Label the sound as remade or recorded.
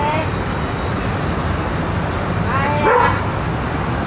recorded